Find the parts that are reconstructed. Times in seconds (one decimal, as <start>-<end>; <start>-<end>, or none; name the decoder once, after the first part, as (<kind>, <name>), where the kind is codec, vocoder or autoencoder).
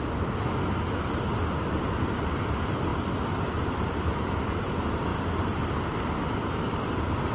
1.3-2.1 (vocoder, BigVGAN v2); 2.9-4.5